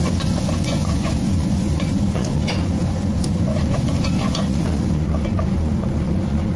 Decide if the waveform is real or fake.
fake